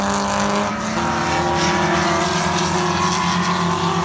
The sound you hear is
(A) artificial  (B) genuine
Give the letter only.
B